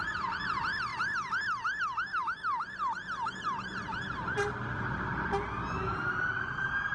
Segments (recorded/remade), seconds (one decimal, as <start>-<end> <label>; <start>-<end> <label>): 0.0-6.9 recorded